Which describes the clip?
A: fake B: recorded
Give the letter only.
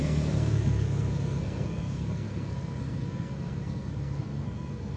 A